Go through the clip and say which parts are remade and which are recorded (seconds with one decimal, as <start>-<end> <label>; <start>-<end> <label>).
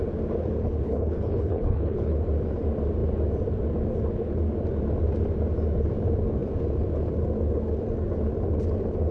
0.0-0.6 recorded; 0.6-2.2 remade; 2.2-9.1 recorded